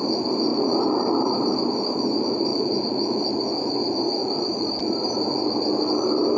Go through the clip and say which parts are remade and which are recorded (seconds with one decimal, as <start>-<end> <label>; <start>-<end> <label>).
0.0-0.5 recorded; 0.5-1.6 remade; 1.6-2.5 recorded; 2.5-3.2 remade; 3.2-4.2 recorded; 4.2-5.3 remade; 5.3-6.4 recorded